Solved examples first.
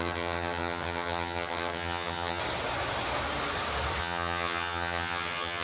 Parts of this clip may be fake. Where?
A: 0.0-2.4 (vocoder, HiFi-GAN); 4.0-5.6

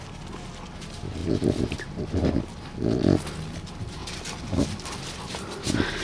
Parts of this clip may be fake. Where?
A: none

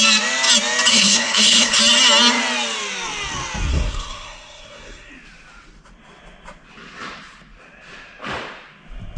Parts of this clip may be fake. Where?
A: 0.9-1.8 (codec, SNAC); 3.7-5.1